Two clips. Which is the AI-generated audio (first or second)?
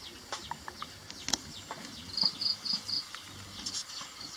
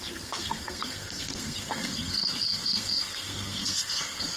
second